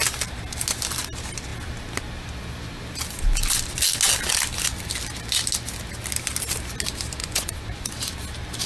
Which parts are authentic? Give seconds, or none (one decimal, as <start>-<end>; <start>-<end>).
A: 0.0-7.2; 7.9-8.7